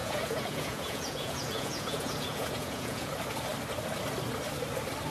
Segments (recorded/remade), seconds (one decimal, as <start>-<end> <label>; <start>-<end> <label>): 0.0-3.1 remade; 3.1-5.1 recorded